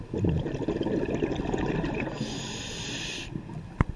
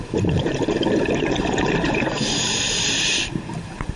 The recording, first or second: first